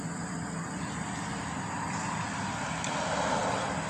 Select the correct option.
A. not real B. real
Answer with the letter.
B